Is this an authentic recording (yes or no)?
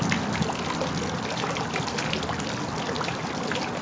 yes